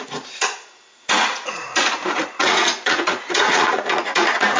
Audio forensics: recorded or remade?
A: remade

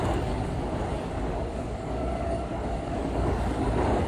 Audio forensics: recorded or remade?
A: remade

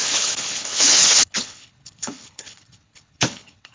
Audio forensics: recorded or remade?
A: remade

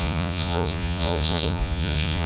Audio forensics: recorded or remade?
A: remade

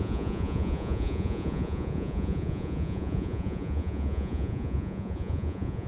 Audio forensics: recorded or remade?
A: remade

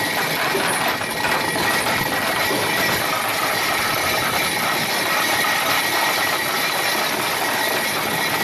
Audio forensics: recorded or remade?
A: recorded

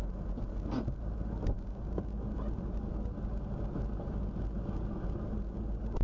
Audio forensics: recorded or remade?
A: recorded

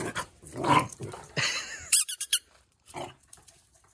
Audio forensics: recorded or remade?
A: remade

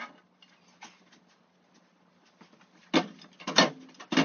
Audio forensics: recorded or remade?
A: recorded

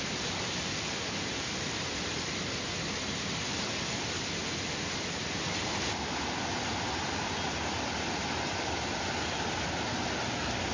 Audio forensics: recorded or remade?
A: recorded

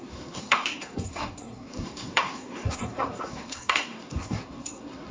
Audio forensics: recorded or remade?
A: remade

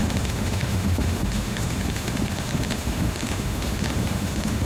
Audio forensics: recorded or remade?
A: remade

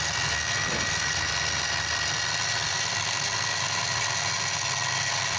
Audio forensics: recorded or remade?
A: recorded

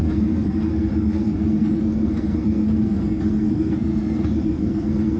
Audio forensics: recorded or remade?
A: remade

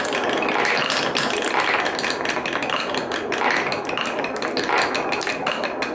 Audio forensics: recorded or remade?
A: recorded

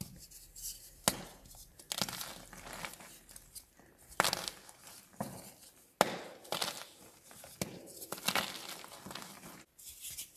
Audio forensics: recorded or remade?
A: recorded